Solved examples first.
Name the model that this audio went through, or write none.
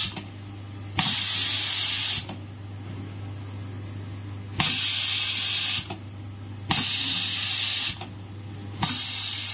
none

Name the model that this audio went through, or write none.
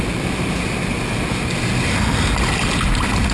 none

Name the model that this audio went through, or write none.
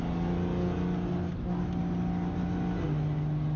none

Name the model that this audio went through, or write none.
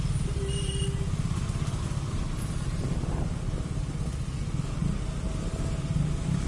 none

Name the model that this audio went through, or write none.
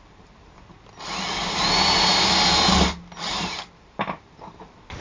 none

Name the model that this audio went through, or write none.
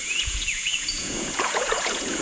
vocoder, Vocos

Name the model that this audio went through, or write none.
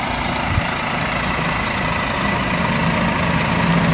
none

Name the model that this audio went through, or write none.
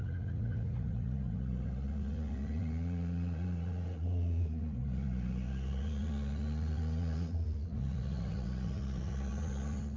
vocoder, Vocos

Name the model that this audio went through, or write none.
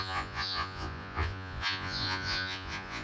vocoder, Vocos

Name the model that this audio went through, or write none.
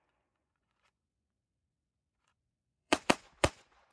vocoder, Vocos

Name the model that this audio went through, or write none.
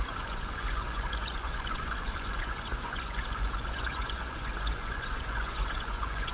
vocoder, Vocos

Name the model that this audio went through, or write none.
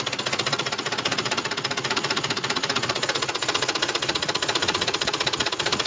vocoder, Vocos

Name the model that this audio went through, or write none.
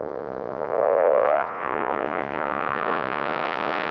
vocoder, Vocos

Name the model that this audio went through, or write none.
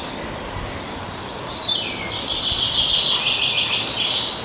none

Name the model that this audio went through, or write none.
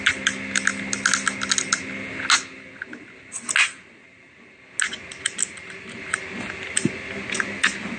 none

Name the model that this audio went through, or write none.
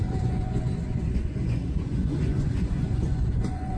vocoder, Vocos